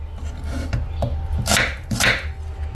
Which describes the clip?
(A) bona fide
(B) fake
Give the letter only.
A